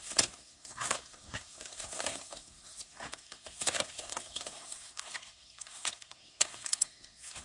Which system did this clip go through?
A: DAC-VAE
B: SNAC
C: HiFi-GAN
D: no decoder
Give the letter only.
B